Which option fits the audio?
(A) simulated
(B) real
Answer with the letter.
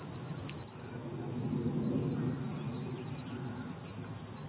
B